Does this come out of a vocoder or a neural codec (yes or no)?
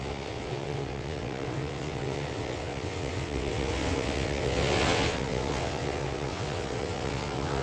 yes